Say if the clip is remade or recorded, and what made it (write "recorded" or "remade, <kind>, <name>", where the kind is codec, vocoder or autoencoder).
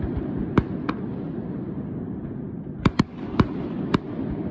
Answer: recorded